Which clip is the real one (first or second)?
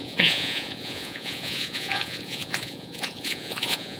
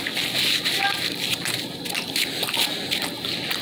second